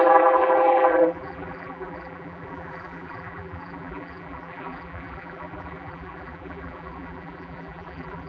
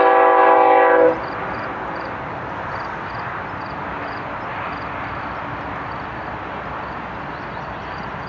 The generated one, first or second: first